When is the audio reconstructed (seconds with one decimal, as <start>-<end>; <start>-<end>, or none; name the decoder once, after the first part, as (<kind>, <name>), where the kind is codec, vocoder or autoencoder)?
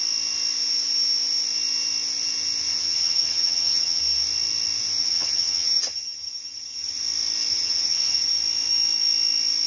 2.7-4.0 (vocoder, HiFi-GAN); 5.0-7.0; 7.5-8.3